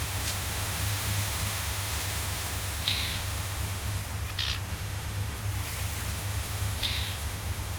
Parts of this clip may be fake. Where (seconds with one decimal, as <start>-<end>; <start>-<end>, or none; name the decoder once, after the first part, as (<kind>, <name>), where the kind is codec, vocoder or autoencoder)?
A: 0.0-4.0 (autoencoder, DAC-VAE); 4.7-5.4; 6.1-7.8